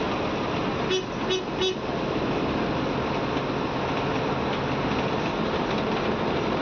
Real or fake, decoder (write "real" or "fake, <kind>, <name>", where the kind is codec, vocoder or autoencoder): real